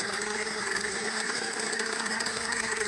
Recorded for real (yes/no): no